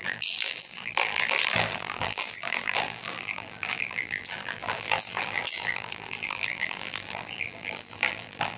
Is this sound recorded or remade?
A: remade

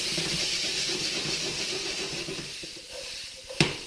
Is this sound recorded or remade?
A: remade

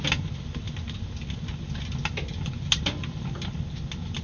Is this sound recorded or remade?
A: recorded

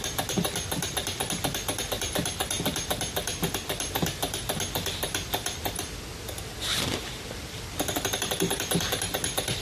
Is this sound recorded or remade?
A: recorded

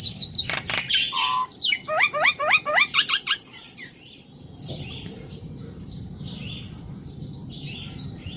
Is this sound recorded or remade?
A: remade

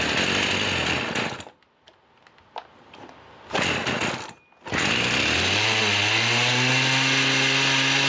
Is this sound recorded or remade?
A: recorded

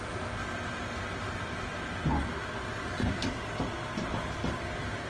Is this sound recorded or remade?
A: recorded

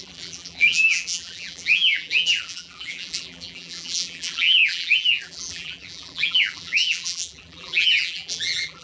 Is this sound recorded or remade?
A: remade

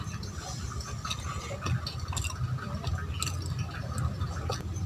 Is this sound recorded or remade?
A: recorded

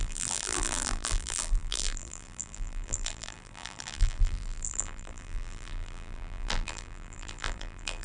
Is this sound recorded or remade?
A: remade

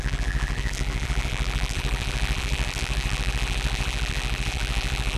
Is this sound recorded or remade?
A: remade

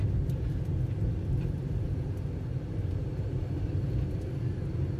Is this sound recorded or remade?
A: recorded